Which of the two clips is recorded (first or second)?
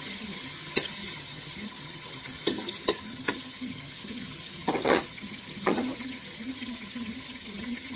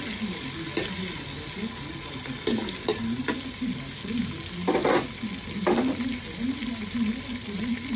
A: second